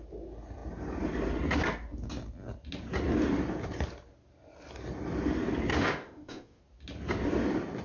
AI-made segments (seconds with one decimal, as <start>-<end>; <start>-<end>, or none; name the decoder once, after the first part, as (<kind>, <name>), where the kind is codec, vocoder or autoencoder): 5.7-6.6 (autoencoder, DAC-VAE)